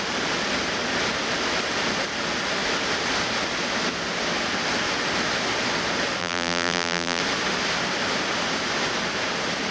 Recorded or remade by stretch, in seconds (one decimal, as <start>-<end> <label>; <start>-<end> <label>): 0.0-6.2 recorded; 6.2-7.2 remade; 7.2-9.7 recorded